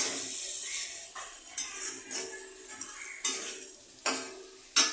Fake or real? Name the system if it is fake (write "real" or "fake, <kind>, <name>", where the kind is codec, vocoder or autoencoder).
real